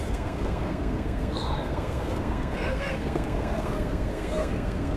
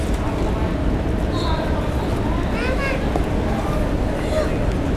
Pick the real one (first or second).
second